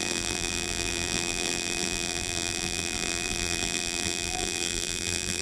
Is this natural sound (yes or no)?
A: no